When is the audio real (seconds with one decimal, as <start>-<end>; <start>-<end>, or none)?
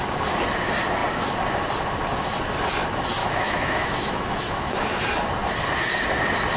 0.0-3.2; 5.0-6.6